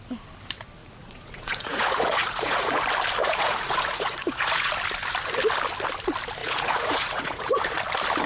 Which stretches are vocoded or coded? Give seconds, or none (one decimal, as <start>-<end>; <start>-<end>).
0.8-2.8; 3.2-4.7; 6.4-7.8